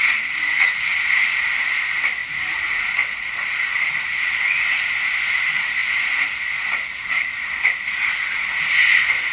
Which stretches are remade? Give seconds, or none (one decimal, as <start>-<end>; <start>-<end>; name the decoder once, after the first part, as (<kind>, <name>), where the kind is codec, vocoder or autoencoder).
none

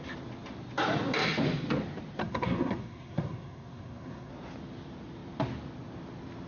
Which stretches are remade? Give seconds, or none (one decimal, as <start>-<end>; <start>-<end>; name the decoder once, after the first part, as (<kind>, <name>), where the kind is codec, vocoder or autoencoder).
2.2-4.3 (codec, SNAC)

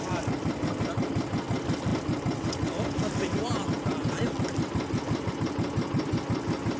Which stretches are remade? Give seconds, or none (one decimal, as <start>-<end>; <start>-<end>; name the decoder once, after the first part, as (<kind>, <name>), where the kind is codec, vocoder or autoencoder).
none

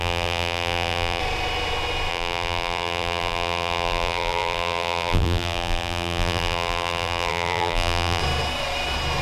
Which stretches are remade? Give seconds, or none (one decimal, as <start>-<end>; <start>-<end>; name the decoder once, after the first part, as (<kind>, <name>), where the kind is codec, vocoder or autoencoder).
0.0-1.2 (vocoder, BigVGAN v2); 2.1-8.2

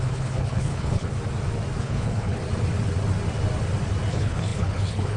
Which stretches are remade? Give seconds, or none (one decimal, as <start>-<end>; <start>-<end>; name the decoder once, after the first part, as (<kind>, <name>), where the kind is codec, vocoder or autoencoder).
0.0-1.1 (codec, HILCodec); 1.8-2.4; 4.1-5.2